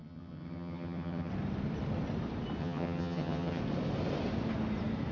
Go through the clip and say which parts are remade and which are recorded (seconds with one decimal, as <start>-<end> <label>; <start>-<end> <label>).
0.0-1.3 remade; 1.3-2.6 recorded; 2.6-3.6 remade; 3.6-5.1 recorded